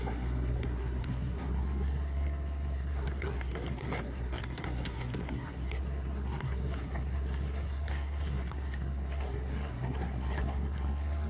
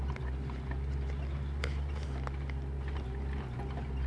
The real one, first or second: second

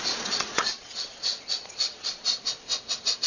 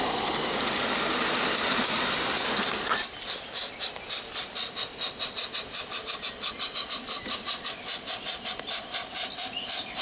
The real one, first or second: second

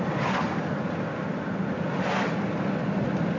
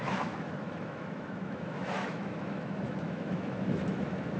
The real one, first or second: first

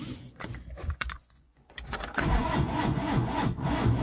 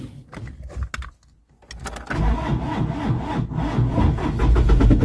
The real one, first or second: second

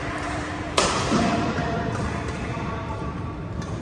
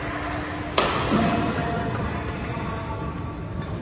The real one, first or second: second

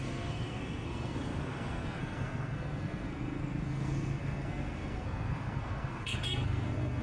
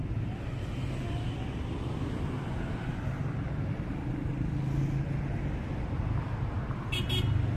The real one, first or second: second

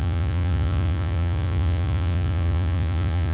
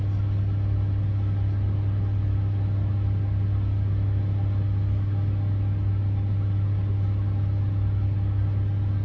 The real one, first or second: second